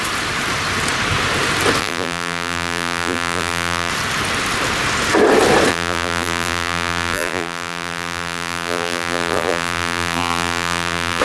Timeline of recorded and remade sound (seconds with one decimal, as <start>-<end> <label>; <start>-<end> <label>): 0.0-1.8 recorded; 1.8-3.9 remade; 3.9-5.7 recorded; 5.7-11.2 remade